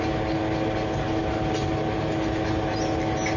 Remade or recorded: recorded